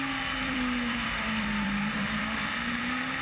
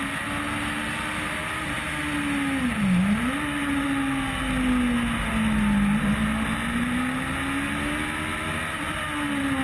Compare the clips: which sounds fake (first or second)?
first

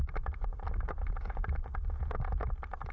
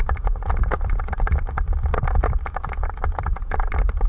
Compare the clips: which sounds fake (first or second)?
second